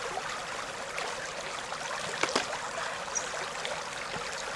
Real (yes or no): yes